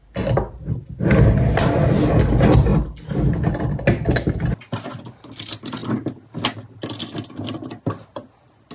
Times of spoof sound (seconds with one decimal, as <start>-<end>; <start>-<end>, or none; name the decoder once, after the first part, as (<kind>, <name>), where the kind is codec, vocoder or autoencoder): none